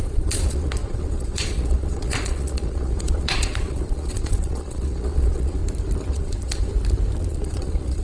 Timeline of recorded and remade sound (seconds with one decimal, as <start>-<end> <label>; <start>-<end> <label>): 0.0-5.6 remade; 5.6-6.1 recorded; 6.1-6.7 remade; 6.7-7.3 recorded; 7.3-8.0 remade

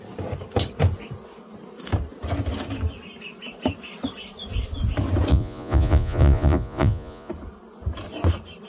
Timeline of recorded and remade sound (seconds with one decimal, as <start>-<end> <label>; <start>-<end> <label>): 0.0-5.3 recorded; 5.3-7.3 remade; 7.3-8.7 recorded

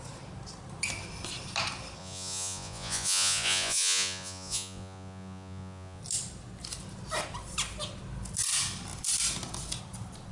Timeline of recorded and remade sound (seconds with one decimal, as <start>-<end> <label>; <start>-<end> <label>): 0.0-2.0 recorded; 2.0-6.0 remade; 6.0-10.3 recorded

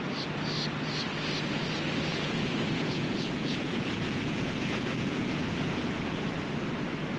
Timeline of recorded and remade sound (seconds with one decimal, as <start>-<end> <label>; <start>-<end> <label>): 0.0-2.1 recorded; 2.1-6.4 remade; 6.4-7.2 recorded